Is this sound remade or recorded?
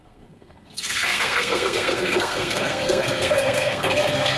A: remade